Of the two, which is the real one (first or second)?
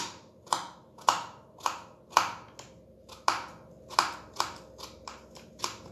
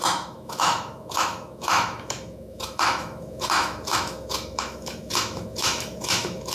first